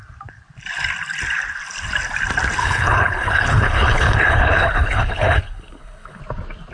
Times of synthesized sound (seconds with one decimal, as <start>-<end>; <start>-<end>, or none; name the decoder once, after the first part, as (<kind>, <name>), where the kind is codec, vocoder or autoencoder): 2.6-6.2 (codec, HILCodec)